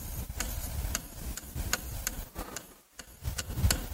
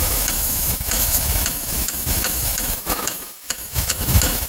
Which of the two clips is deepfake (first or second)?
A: second